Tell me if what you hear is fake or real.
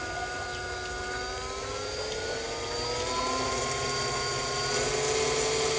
real